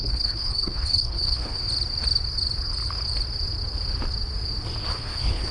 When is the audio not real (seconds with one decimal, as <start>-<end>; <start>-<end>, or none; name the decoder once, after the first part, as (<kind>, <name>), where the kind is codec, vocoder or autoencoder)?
0.0-1.6 (codec, HILCodec); 4.9-5.5